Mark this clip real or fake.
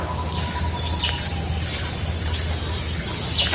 real